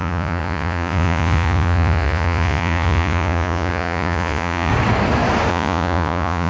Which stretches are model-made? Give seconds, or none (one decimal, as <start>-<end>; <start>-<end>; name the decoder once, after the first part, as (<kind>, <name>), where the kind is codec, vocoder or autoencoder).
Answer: 0.0-4.7 (vocoder, Vocos); 5.5-6.5

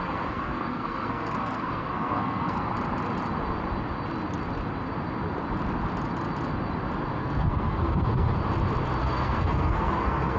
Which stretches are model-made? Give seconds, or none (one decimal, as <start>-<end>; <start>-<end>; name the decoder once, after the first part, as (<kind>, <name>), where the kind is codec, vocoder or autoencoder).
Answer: 0.0-2.7 (codec, SNAC); 7.2-8.4; 9.0-10.4